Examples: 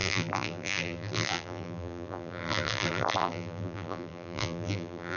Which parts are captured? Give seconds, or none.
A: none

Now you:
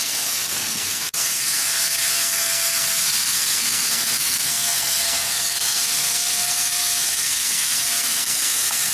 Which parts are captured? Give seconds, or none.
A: none

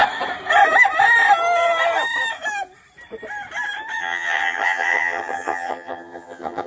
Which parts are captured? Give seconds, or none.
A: 0.0-4.0

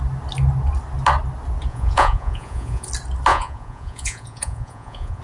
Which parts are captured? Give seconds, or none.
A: 0.0-1.7; 2.9-3.3

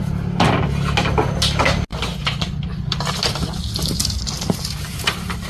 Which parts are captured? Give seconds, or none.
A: 0.0-5.5

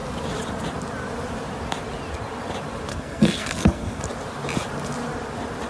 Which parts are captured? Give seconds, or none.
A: 0.0-2.9; 4.0-5.7

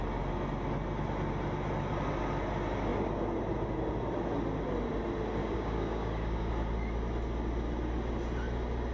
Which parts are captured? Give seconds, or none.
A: 0.0-5.4; 6.5-8.9

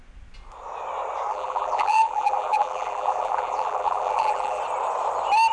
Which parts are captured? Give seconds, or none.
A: 0.0-1.3; 4.6-5.5